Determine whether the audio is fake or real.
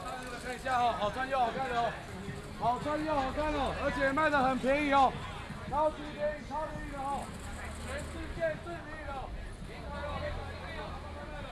real